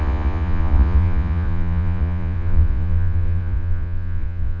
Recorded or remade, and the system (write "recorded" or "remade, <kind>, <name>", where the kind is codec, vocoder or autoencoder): remade, vocoder, Vocos